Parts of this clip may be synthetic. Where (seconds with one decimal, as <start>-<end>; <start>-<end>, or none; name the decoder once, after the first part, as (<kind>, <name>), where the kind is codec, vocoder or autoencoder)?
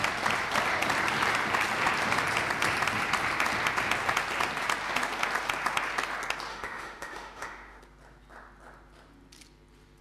6.5-7.8 (autoencoder, DAC-VAE)